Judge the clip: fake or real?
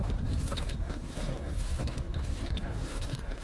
fake